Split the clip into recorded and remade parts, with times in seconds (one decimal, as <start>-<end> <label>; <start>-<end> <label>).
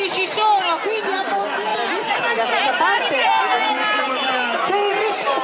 0.0-5.4 recorded